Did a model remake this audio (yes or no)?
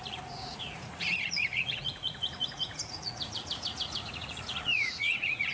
yes